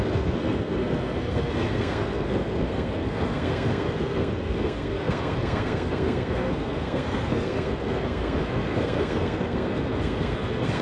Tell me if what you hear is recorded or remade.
remade